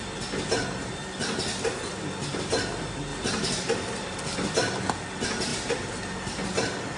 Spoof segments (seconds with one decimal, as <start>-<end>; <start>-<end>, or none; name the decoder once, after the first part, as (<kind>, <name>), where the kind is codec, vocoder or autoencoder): 3.1-4.9 (vocoder, BigVGAN v2); 5.5-7.0

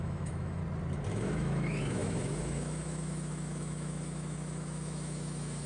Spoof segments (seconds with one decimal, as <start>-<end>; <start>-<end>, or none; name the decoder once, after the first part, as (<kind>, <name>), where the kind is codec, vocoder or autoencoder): 0.0-0.6 (autoencoder, DAC-VAE); 1.1-5.7

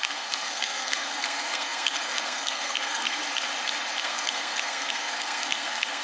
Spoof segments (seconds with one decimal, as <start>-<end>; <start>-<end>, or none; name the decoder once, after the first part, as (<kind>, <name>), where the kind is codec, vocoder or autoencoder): 0.0-3.2 (codec, SNAC); 4.0-6.0